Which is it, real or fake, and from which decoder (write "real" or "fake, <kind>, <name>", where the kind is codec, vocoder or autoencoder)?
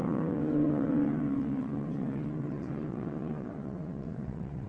fake, vocoder, WaveNeXt